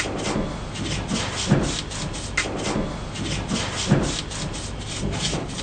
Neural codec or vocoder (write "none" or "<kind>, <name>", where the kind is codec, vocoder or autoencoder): none